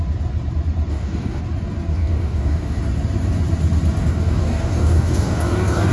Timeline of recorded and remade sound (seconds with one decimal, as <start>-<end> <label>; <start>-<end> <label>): 0.0-0.9 recorded; 0.9-1.4 remade; 1.4-1.9 recorded; 1.9-2.8 remade; 2.8-4.0 recorded; 4.0-5.9 remade